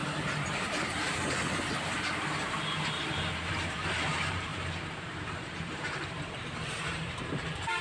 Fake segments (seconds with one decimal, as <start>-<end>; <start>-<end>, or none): 0.0-7.8